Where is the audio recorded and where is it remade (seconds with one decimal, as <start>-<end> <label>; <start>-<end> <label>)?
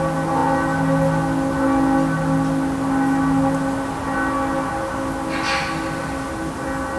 0.0-7.0 recorded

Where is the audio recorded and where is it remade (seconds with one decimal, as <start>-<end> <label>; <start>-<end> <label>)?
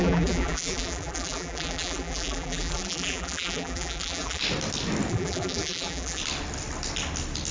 0.0-4.4 remade; 4.4-5.1 recorded; 5.1-6.2 remade; 6.2-7.5 recorded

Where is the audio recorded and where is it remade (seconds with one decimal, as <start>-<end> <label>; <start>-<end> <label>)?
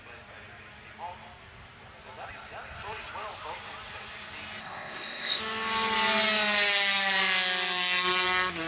0.0-4.6 recorded; 4.6-5.4 remade; 5.4-8.7 recorded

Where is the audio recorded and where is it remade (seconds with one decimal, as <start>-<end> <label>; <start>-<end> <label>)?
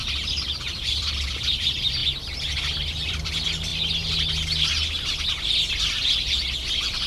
0.0-1.1 remade; 1.1-7.1 recorded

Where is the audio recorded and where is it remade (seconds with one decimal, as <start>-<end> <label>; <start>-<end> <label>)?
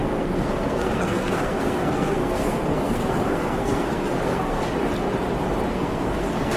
0.0-4.6 remade; 4.6-5.7 recorded; 5.7-6.6 remade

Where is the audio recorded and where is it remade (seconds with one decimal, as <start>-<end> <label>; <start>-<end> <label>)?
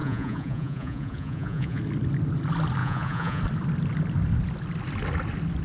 0.0-1.8 remade; 1.8-2.8 recorded; 2.8-3.4 remade; 3.4-5.6 recorded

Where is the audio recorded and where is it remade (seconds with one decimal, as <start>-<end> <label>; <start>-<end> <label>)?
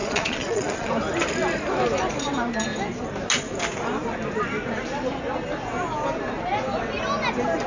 0.0-0.9 remade; 0.9-7.7 recorded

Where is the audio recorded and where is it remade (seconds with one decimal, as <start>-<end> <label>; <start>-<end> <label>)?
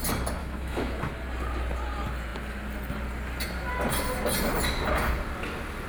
0.0-0.4 recorded; 0.4-1.1 remade; 1.1-5.9 recorded